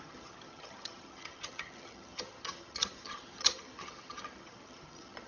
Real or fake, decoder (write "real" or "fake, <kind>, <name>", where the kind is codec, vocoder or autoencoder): fake, vocoder, HiFi-GAN